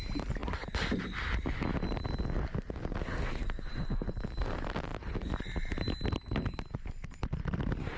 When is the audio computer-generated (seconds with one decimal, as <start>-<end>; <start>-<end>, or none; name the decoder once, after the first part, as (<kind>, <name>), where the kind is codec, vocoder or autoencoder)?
none